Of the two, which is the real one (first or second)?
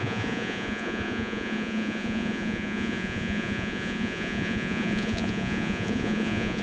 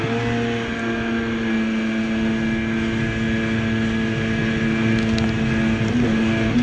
second